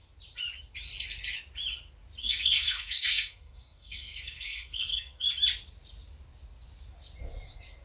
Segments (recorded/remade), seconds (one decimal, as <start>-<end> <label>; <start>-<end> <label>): 0.0-2.2 recorded; 2.2-5.3 remade; 5.3-7.8 recorded